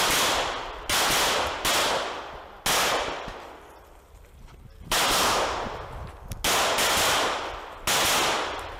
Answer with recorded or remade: recorded